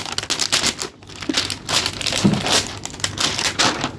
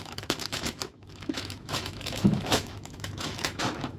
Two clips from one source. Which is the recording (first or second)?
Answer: first